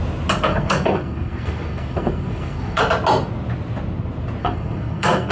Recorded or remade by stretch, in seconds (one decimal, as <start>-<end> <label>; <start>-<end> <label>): 0.0-0.5 recorded; 0.5-2.8 remade; 2.8-4.4 recorded; 4.4-5.3 remade